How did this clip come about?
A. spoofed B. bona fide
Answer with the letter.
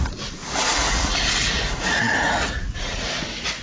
A